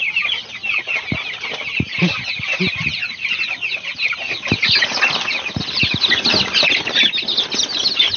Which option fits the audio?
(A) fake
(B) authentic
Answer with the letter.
B